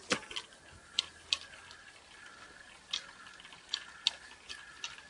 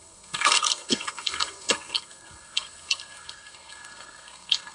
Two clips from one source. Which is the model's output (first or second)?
second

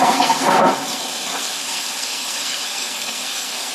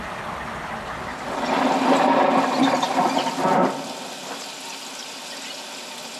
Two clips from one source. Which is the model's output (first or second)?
first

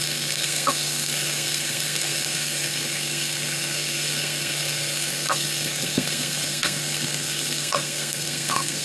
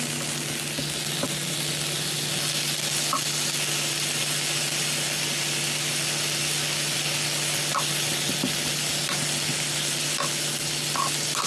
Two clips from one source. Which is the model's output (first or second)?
first